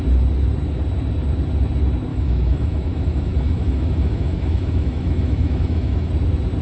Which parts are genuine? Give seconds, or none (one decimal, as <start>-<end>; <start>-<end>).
0.0-2.1; 6.1-6.6